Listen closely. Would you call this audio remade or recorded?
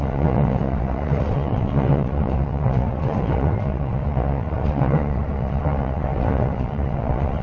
remade